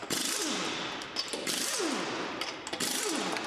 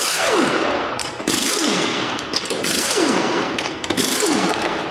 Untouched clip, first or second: first